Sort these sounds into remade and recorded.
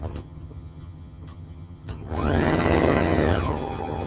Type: remade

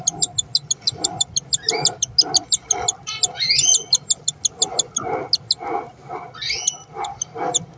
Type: recorded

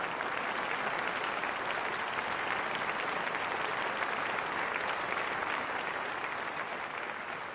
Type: recorded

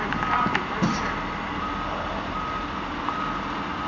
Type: recorded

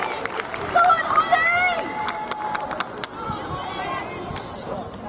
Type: recorded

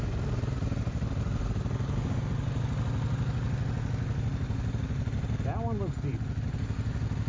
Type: recorded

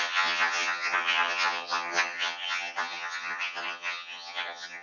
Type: remade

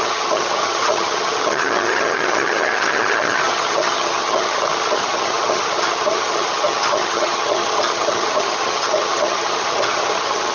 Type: remade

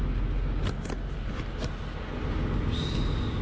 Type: recorded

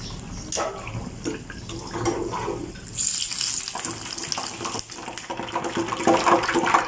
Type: recorded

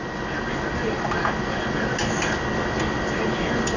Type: recorded